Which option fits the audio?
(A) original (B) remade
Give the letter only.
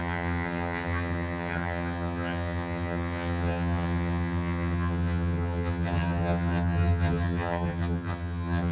B